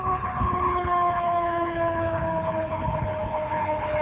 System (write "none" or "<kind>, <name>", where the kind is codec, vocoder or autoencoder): codec, HILCodec